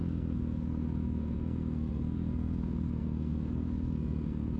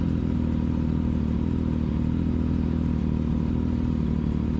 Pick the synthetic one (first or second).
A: first